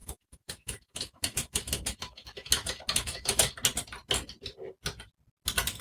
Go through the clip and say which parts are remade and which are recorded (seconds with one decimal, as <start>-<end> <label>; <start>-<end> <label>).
0.0-3.5 remade; 3.5-5.8 recorded